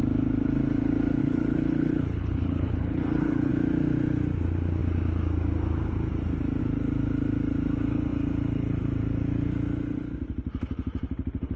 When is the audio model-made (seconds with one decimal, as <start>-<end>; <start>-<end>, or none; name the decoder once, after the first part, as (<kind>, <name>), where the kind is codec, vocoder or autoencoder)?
1.2-3.5 (codec, HILCodec)